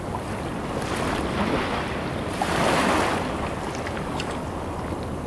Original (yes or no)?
yes